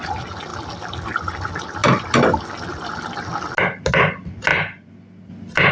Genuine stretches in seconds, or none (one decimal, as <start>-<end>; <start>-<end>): 0.0-5.7